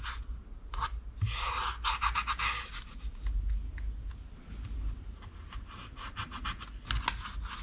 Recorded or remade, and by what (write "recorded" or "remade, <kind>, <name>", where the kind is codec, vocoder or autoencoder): recorded